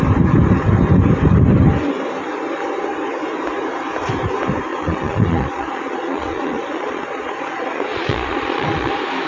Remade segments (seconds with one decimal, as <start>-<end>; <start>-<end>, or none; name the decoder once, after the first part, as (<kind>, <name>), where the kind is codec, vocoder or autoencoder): 4.7-8.9 (vocoder, Vocos)